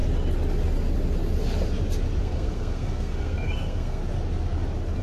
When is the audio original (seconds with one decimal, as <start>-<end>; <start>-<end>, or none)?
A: 0.0-2.2; 4.0-5.0